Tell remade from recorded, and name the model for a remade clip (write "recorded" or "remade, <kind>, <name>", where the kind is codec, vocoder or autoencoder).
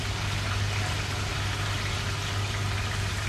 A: recorded